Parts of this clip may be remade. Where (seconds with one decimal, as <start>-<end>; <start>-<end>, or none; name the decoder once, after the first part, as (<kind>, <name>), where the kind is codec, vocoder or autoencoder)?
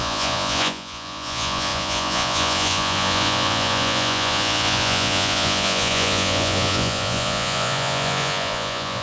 0.0-9.0 (vocoder, Vocos)